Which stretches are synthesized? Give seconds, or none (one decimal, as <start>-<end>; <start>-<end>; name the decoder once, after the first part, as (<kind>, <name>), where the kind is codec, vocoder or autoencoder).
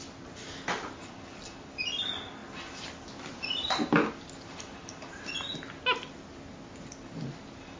none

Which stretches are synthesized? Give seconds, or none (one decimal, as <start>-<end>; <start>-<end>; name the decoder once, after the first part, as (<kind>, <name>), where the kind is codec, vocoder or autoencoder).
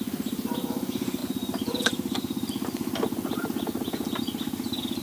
1.2-4.2 (vocoder, BigVGAN v2)